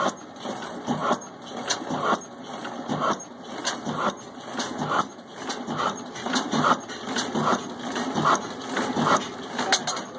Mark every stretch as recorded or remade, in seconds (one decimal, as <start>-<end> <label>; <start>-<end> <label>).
0.0-10.2 recorded